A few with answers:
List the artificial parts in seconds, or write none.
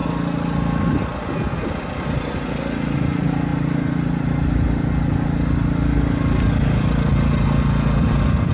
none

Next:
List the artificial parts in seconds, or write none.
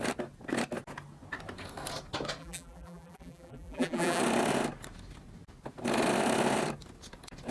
2.4-4.2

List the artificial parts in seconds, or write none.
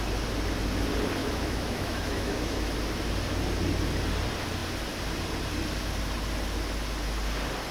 1.2-2.7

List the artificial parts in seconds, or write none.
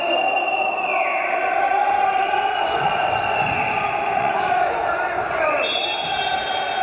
1.7-5.8